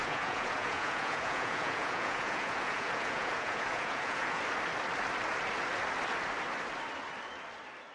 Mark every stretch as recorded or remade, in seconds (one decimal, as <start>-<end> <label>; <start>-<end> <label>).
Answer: 0.0-4.4 remade; 4.4-7.9 recorded